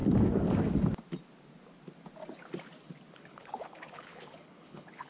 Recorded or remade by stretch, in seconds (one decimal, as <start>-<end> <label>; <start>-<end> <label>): 0.0-3.1 recorded; 3.1-5.1 remade